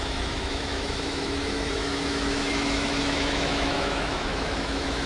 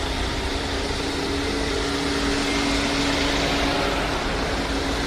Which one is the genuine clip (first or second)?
second